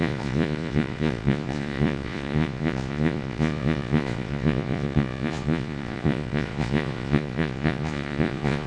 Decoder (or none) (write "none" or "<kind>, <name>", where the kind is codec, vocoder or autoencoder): vocoder, Vocos